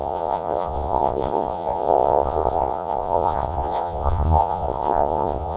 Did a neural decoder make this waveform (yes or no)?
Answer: yes